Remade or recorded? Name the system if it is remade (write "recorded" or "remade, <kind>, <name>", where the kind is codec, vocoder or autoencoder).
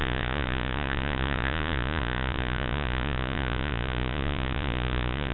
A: remade, vocoder, Vocos